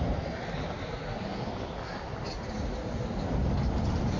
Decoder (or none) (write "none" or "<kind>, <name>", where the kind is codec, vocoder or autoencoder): none